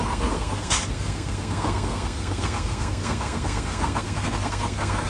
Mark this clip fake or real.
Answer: fake